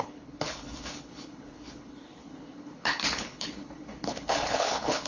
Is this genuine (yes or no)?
no